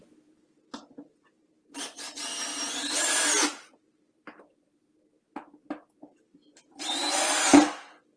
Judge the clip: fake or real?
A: real